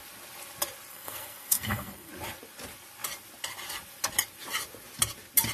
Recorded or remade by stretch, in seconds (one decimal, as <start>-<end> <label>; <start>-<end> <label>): 0.0-0.9 recorded; 0.9-2.1 remade; 2.1-5.5 recorded